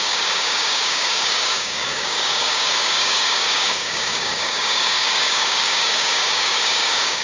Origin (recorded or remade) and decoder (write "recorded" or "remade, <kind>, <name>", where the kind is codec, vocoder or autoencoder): remade, codec, DAC